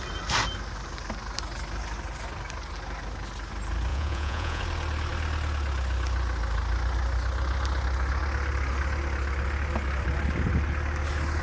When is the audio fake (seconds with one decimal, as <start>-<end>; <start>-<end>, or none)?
3.9-4.6